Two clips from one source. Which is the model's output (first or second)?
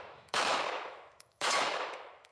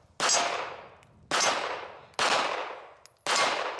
first